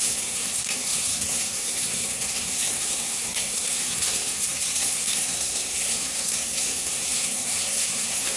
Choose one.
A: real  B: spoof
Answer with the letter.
B